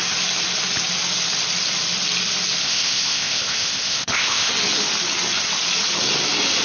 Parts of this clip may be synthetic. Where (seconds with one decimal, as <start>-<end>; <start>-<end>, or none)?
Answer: 2.6-4.5